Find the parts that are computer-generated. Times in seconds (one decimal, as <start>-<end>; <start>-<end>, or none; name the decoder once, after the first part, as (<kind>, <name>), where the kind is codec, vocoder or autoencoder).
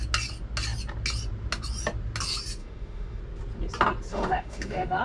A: 2.6-3.2 (autoencoder, DAC-VAE); 4.1-5.0